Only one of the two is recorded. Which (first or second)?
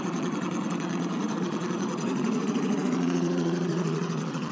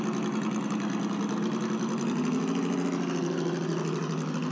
second